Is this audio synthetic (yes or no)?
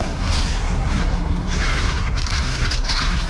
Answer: yes